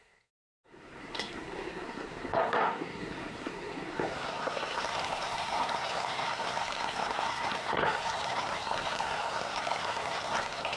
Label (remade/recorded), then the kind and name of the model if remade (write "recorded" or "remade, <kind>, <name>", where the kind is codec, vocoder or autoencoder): remade, codec, SNAC